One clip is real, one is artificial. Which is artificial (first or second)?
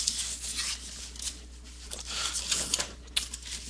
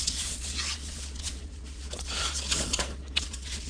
second